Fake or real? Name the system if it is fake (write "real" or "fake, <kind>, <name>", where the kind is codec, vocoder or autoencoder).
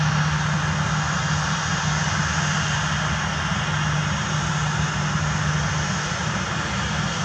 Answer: real